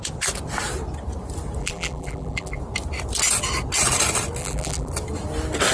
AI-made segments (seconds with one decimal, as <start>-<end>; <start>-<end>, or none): 1.6-2.6; 4.4-4.9